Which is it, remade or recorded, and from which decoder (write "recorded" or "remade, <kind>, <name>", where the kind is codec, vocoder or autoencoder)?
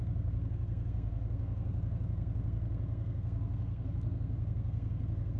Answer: remade, codec, SNAC